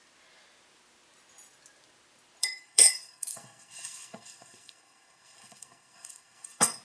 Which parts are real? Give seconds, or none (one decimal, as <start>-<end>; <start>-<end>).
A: 0.0-2.4